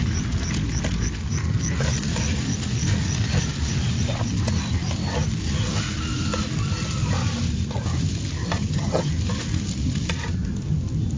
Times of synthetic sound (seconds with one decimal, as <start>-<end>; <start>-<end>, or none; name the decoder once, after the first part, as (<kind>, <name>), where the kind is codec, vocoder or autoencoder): 8.6-9.1 (vocoder, HiFi-GAN)